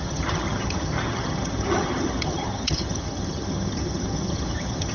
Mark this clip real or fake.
fake